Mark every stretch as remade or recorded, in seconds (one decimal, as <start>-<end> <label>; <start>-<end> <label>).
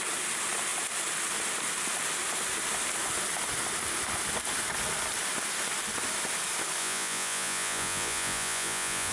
0.0-6.8 recorded; 6.8-9.1 remade